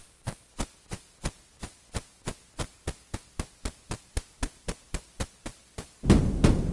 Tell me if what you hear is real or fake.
real